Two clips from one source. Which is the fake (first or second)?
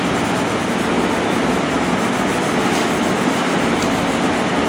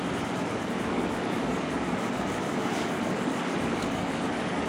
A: second